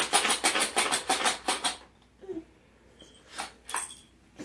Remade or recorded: recorded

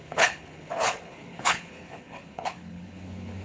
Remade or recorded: remade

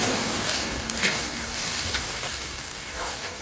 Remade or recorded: remade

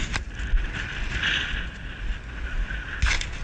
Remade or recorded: recorded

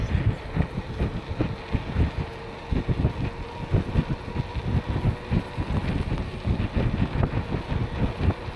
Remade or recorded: recorded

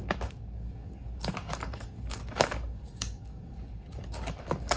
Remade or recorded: remade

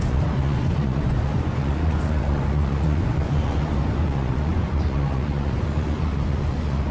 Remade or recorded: remade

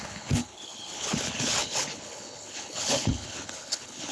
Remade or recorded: remade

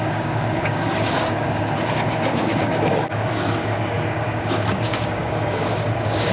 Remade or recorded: remade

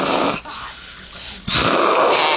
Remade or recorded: recorded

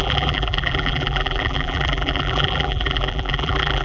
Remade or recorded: remade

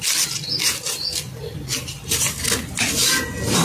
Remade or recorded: recorded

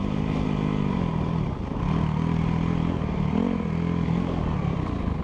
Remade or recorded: recorded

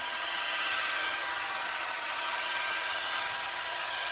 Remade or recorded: remade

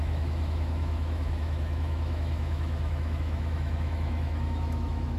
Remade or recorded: remade